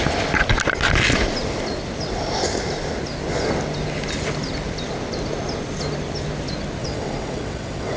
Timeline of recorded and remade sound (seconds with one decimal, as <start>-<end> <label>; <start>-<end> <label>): 0.0-6.8 recorded; 6.8-8.0 remade